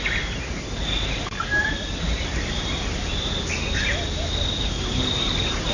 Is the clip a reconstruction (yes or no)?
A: no